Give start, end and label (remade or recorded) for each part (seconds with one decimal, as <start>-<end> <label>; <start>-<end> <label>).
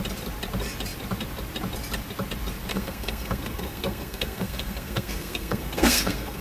0.0-2.7 recorded; 2.7-6.4 remade